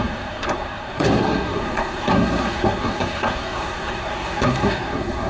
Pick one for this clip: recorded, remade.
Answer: remade